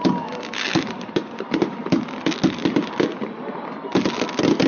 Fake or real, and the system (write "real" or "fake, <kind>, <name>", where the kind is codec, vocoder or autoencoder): real